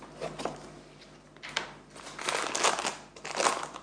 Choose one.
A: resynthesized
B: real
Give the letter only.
B